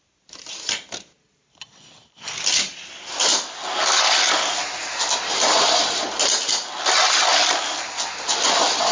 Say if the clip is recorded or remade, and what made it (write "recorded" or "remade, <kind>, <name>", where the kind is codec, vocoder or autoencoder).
recorded